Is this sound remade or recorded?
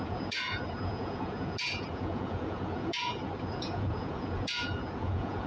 remade